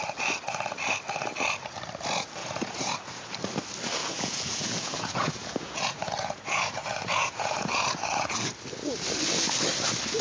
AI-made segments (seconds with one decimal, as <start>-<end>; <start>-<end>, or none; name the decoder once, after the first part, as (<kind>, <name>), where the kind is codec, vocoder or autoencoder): 2.4-3.3 (vocoder, Vocos); 4.0-8.5